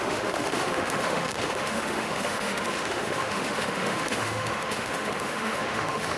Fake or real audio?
fake